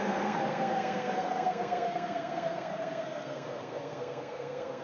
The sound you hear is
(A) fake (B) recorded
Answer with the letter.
A